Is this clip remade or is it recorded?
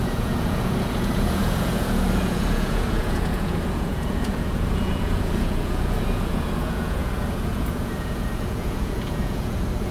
remade